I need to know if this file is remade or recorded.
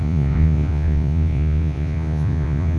remade